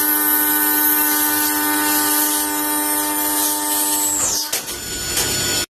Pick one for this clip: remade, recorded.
recorded